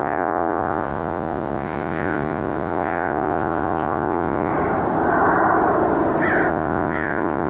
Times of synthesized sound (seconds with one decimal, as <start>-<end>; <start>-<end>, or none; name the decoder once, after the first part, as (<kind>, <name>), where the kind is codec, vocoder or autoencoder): 0.0-4.5 (vocoder, Vocos); 6.5-7.5